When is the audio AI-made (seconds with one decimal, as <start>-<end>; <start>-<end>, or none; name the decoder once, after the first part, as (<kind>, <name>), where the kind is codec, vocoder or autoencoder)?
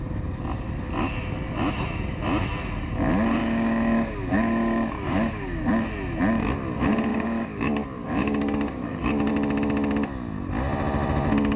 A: 3.4-5.7 (codec, DAC); 7.1-9.3